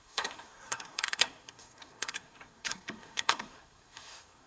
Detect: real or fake fake